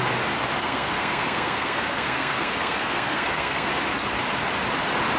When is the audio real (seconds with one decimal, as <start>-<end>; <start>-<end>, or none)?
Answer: 0.0-0.6; 3.7-5.2